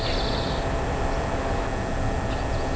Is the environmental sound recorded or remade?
recorded